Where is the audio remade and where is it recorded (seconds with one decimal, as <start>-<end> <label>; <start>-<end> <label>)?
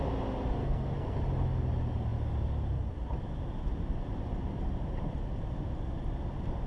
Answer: 0.0-0.6 recorded; 0.6-1.2 remade; 1.2-6.7 recorded